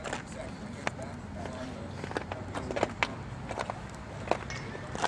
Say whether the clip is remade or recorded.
recorded